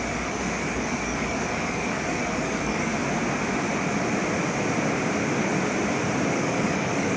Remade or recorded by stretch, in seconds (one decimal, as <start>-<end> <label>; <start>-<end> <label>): 0.0-2.9 remade; 2.9-6.3 recorded; 6.3-7.2 remade

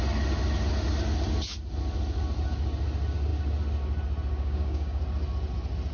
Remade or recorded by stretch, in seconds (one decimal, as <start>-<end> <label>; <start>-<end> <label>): 0.0-4.4 recorded; 4.4-5.0 remade; 5.0-5.9 recorded

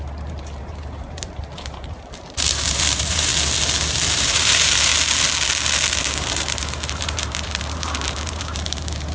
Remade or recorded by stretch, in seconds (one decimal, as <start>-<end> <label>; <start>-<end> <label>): 0.0-3.3 remade; 3.3-4.1 recorded; 4.1-4.9 remade; 4.9-6.0 recorded; 6.0-9.1 remade

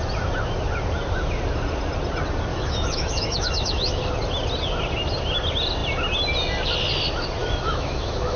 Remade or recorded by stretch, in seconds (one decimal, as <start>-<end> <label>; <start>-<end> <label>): 0.0-2.5 recorded; 2.5-4.0 remade; 4.0-7.4 recorded; 7.4-8.4 remade

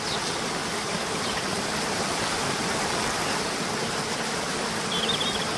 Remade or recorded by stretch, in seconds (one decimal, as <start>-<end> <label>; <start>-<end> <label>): 0.0-0.6 recorded; 0.6-3.2 remade; 3.2-5.6 recorded

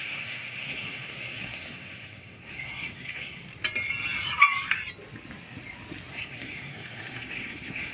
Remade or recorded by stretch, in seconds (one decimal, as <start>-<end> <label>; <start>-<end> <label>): 0.0-3.4 remade; 3.4-6.1 recorded; 6.1-7.9 remade

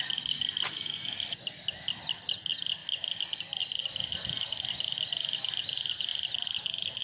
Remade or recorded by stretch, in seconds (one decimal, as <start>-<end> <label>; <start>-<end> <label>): 0.0-7.0 recorded